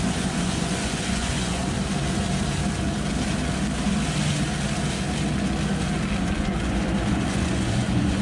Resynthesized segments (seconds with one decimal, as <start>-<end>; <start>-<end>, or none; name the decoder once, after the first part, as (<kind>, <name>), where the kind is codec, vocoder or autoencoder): 0.0-1.6 (vocoder, Vocos); 6.2-8.2